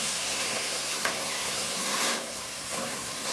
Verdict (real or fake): fake